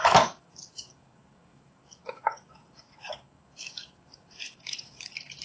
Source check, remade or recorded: remade